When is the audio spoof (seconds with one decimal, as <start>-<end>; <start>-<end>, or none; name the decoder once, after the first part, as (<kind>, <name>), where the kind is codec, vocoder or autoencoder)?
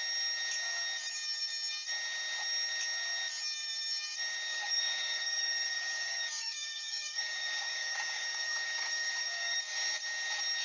4.5-9.6 (codec, DAC)